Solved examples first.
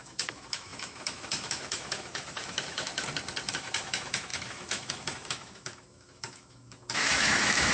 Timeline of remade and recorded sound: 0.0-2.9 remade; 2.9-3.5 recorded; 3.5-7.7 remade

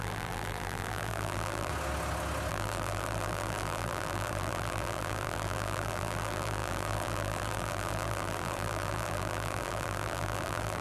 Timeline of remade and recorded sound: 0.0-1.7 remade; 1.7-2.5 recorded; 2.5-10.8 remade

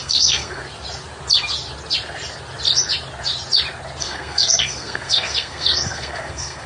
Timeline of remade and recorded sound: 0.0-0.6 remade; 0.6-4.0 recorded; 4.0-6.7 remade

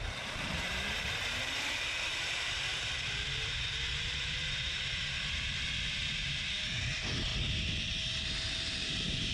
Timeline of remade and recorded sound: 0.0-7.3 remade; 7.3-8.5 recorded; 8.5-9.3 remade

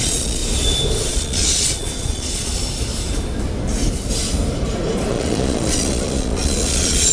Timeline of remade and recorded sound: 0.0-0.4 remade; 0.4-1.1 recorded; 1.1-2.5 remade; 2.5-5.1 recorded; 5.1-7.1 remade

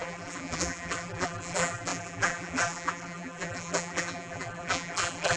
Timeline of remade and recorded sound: 0.0-5.4 remade